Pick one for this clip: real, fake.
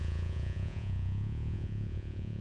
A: fake